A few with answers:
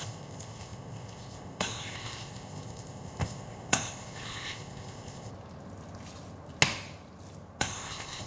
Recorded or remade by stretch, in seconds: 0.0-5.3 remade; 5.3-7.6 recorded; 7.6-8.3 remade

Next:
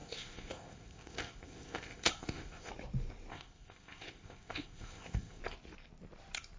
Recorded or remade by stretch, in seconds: 0.0-2.7 remade; 2.7-3.3 recorded; 3.3-5.4 remade; 5.4-6.6 recorded

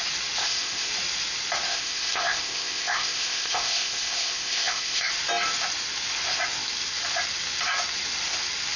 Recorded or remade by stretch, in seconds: 0.0-0.4 recorded; 0.4-0.9 remade; 0.9-1.7 recorded; 1.7-5.1 remade; 5.1-8.8 recorded